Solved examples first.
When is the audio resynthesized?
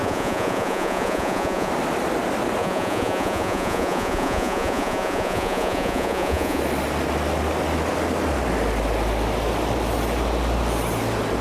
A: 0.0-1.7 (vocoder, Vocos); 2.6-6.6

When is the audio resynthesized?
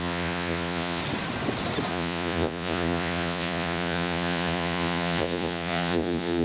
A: 0.0-1.0 (vocoder, Vocos); 1.9-6.4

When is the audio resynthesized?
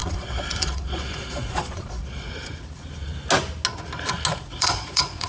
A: 0.0-2.3 (vocoder, Vocos); 4.3-5.3